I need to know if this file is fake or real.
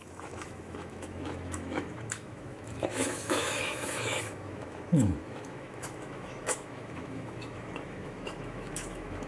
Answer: fake